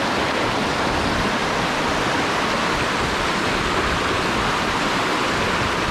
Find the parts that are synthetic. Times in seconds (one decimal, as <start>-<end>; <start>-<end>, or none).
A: none

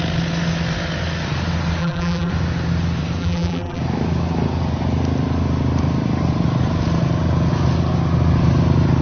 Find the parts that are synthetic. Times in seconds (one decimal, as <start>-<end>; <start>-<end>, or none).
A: 1.8-2.3; 3.2-3.8